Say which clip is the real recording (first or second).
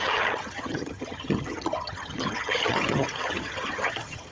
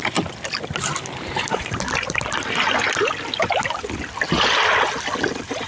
second